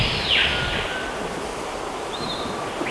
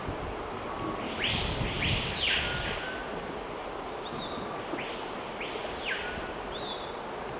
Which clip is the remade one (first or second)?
first